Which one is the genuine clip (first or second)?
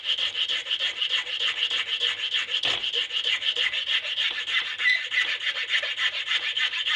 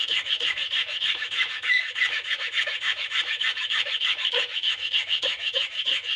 first